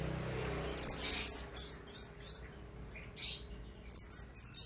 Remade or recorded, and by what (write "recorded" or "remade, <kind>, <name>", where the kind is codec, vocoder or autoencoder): recorded